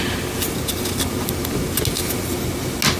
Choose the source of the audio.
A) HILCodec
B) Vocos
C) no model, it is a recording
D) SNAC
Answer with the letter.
C